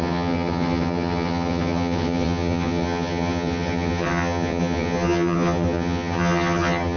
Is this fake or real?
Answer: fake